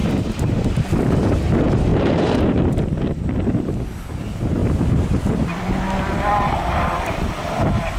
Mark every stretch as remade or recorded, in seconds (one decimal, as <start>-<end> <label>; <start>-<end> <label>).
0.0-0.7 remade; 0.7-1.9 recorded; 1.9-2.7 remade; 2.7-8.0 recorded